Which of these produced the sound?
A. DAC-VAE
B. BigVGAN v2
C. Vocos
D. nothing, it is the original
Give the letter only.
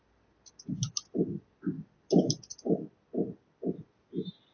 D